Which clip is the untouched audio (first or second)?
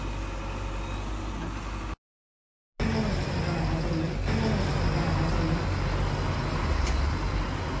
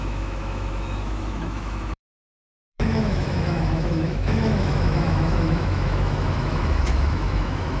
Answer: first